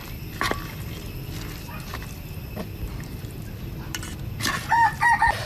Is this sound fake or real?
real